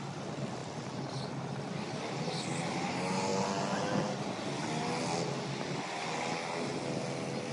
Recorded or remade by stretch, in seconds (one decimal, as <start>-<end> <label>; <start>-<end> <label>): 0.0-7.5 recorded